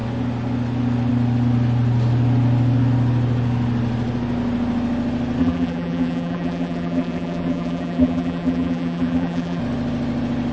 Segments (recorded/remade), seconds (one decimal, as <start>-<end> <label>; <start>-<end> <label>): 0.0-5.4 recorded; 5.4-9.6 remade; 9.6-10.5 recorded

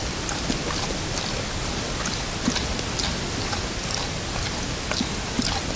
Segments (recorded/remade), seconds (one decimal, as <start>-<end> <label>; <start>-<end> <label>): 0.0-5.8 recorded

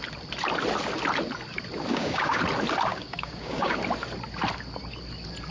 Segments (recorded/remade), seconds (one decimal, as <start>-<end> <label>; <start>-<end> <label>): 0.0-1.9 recorded; 1.9-2.4 remade; 2.4-2.9 recorded; 2.9-3.8 remade; 3.8-5.5 recorded

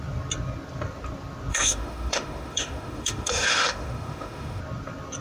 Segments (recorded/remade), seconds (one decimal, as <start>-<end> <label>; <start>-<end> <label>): 0.0-1.5 recorded; 1.5-4.6 remade; 4.6-5.2 recorded

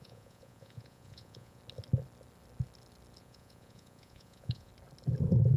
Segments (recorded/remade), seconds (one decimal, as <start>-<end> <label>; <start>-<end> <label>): 0.0-1.6 remade; 1.6-3.2 recorded; 3.2-4.7 remade; 4.7-5.6 recorded

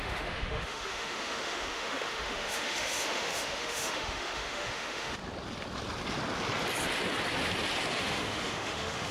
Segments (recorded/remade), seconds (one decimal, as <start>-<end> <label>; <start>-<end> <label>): 0.0-5.2 remade; 5.2-8.0 recorded; 8.0-9.1 remade